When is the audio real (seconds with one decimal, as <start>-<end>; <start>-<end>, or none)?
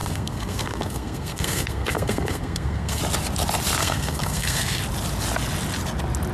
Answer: 3.0-3.8; 4.8-6.3